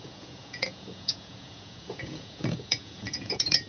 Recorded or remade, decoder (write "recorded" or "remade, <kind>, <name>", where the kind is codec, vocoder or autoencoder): remade, vocoder, Vocos